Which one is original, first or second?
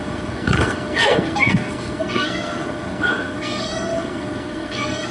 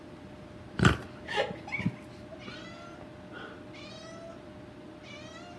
second